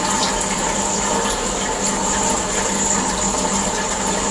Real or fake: real